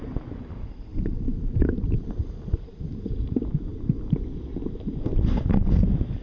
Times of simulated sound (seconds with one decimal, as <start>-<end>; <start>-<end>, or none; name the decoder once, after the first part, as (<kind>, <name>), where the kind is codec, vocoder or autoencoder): 0.9-3.1 (vocoder, BigVGAN v2)